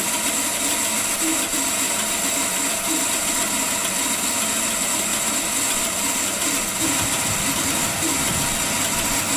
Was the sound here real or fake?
real